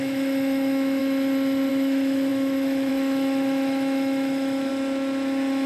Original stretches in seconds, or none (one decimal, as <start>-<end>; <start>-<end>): 1.0-1.7; 4.7-5.7